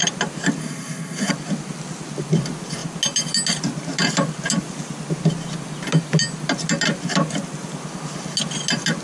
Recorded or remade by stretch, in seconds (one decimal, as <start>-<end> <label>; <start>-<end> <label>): 0.0-0.6 recorded; 0.6-1.3 remade; 1.3-9.0 recorded